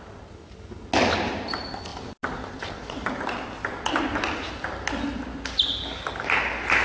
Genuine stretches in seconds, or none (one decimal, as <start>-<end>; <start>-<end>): 0.0-6.8